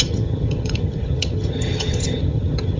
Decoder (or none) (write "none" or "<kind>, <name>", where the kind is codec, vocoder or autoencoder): vocoder, HiFi-GAN